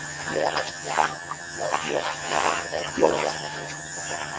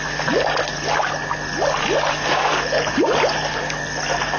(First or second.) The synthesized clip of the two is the first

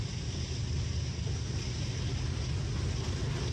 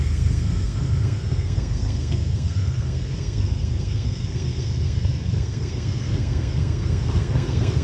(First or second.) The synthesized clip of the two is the second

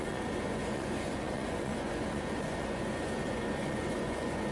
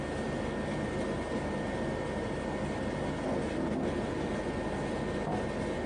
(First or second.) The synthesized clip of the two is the first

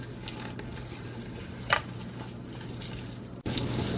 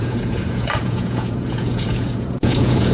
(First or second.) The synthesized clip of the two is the second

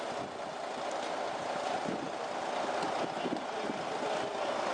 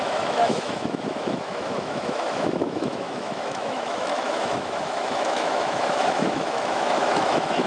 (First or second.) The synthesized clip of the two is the second